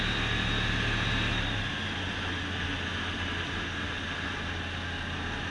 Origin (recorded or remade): recorded